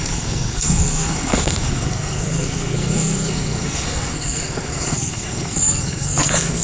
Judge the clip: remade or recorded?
remade